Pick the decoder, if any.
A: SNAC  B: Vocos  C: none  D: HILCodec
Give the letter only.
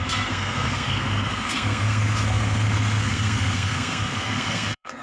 A